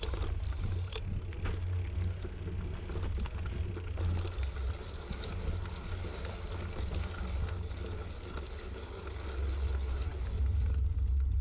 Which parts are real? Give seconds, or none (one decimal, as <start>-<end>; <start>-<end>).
0.0-11.4